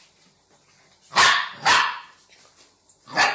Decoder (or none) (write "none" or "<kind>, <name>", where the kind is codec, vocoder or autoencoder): none